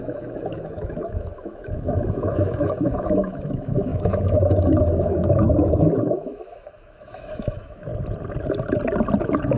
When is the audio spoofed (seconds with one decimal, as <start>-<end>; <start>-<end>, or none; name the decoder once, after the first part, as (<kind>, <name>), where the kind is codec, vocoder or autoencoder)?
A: 0.0-7.9 (autoencoder, DAC-VAE); 9.2-9.6